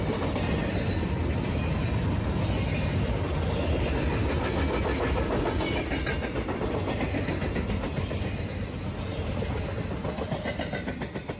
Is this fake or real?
real